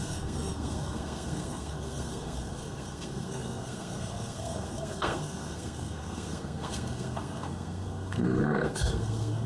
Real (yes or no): no